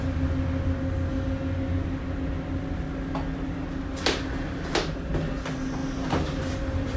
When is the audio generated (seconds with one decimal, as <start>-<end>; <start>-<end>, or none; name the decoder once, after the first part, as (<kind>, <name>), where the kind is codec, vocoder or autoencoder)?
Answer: 5.8-7.0 (vocoder, BigVGAN v2)